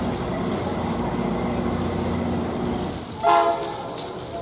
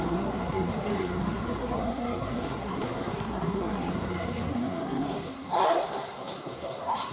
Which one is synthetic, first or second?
second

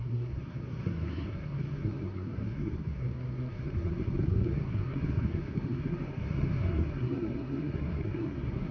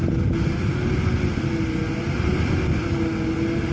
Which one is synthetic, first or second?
first